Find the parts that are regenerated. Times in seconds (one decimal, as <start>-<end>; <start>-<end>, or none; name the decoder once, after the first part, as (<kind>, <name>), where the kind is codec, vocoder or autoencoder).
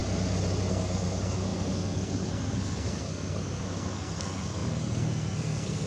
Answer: 0.7-5.9 (codec, SNAC)